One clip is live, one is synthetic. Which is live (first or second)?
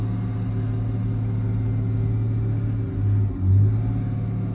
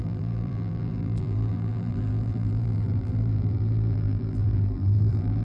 first